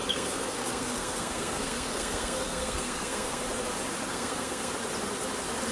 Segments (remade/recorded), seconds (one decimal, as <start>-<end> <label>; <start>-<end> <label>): 0.0-3.4 remade; 3.4-4.1 recorded; 4.1-4.7 remade; 4.7-5.7 recorded